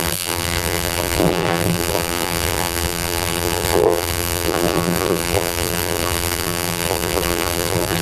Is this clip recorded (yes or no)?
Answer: no